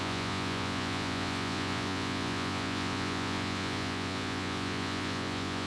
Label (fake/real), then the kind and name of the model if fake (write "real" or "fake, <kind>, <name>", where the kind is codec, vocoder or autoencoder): fake, vocoder, Vocos